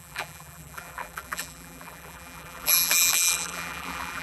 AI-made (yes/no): yes